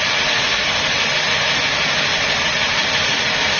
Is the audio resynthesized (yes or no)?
no